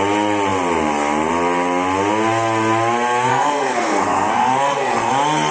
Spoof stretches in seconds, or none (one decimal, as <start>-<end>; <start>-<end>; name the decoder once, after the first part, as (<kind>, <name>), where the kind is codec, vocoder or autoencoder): 3.3-5.1 (codec, SNAC)